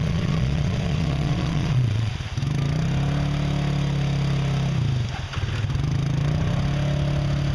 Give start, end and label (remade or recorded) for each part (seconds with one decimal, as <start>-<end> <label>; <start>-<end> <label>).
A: 0.0-2.1 remade; 2.1-7.5 recorded